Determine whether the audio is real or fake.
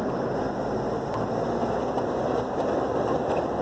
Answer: real